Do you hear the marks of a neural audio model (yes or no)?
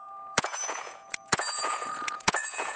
yes